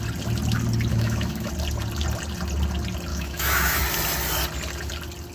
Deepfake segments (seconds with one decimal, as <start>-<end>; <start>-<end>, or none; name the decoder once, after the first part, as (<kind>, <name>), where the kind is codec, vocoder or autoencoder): 0.9-1.5 (autoencoder, DAC-VAE); 3.1-3.8